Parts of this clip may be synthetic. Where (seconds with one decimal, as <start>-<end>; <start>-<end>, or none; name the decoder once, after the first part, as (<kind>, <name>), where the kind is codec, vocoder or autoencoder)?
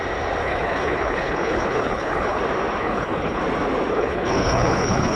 0.4-2.4 (codec, HILCodec); 2.8-3.4; 3.9-5.2